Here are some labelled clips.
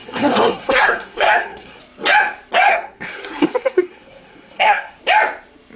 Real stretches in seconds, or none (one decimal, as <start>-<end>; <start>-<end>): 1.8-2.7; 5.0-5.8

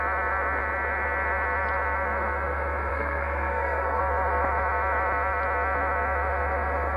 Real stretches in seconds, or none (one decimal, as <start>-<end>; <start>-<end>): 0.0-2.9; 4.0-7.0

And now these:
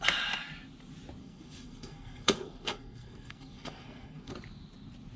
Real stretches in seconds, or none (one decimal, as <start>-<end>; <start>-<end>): 0.0-1.2; 4.3-5.2